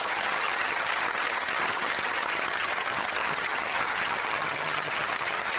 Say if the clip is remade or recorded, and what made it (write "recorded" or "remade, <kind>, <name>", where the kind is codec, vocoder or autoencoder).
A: remade, vocoder, HiFi-GAN